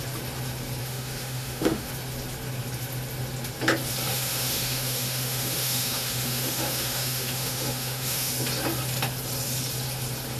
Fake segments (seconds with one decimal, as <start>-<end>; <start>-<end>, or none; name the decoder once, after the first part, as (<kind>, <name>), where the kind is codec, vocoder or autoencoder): 0.8-1.9 (autoencoder, DAC-VAE); 4.1-8.3